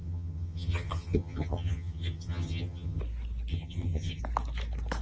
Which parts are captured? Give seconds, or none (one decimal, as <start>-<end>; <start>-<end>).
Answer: 3.0-3.5; 4.2-5.0